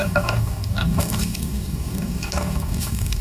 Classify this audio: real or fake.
fake